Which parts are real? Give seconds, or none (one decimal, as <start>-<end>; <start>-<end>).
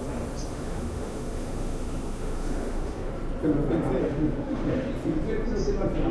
0.0-0.5; 3.1-4.0; 4.9-6.1